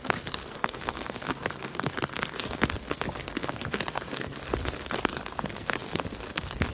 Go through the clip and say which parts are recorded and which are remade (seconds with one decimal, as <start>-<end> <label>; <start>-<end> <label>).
0.0-6.7 remade